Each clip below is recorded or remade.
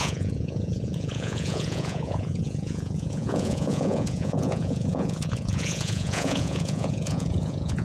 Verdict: remade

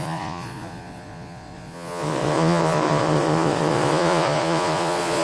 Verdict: remade